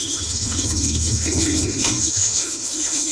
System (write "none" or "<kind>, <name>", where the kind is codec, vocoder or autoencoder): autoencoder, DAC-VAE